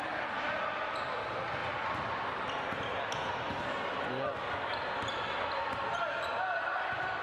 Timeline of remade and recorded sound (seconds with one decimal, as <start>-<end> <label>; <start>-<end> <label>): 0.0-7.2 recorded

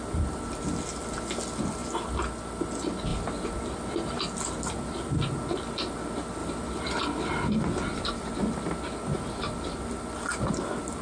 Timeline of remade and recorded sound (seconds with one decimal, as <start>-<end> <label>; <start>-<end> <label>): 0.0-3.1 recorded; 3.1-4.2 remade; 4.2-6.4 recorded; 6.4-7.0 remade; 7.0-11.0 recorded

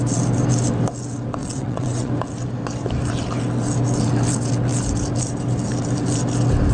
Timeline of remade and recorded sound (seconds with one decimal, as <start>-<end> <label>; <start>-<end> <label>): 0.0-1.4 recorded; 1.4-2.1 remade; 2.1-6.7 recorded

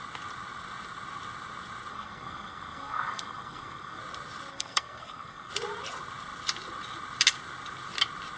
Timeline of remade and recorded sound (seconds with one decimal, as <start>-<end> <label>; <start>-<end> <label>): 0.0-1.9 recorded; 1.9-4.0 remade; 4.0-4.5 recorded; 4.5-5.5 remade; 5.5-8.4 recorded

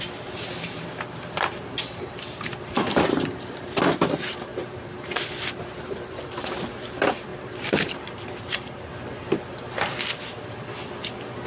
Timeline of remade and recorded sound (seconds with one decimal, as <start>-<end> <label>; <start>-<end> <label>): 0.0-8.9 remade; 8.9-11.5 recorded